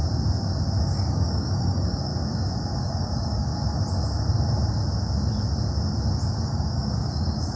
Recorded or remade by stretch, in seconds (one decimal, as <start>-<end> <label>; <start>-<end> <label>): 0.0-0.8 recorded; 0.8-2.1 remade; 2.1-2.8 recorded; 2.8-3.5 remade; 3.5-6.4 recorded; 6.4-7.6 remade